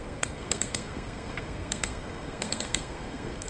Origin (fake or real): fake